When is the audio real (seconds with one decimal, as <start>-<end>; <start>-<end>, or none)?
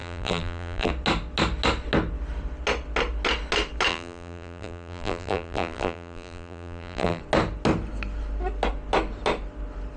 0.9-3.9; 7.2-10.0